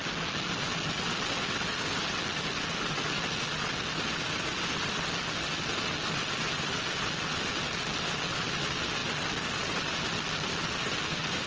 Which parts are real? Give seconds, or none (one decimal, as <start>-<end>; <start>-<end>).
0.0-11.5